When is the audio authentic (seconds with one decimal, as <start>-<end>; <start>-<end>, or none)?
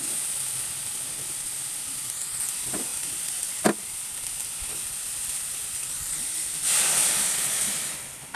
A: 0.0-8.4